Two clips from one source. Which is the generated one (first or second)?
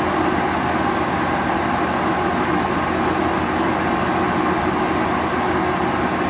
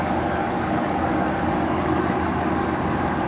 second